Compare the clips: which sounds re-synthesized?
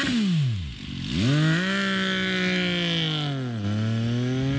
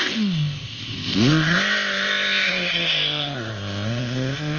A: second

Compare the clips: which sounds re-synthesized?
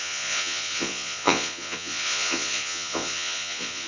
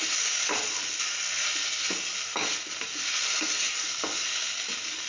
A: first